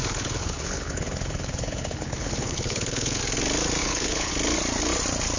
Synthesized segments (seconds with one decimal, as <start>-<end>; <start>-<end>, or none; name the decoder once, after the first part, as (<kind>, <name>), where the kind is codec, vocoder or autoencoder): 0.0-3.2 (codec, HILCodec); 3.8-4.3